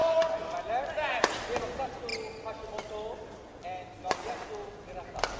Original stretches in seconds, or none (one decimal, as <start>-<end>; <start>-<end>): 0.0-5.4